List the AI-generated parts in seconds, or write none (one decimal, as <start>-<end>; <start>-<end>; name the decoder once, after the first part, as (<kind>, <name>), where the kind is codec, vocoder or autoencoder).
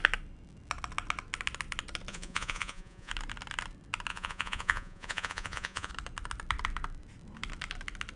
2.1-3.1 (vocoder, Vocos); 4.1-5.9